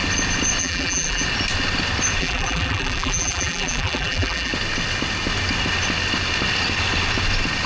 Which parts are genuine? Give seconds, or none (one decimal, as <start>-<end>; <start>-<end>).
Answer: 0.0-0.6; 1.2-2.2; 4.5-7.7